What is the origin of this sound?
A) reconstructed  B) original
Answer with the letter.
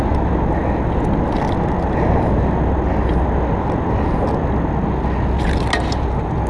B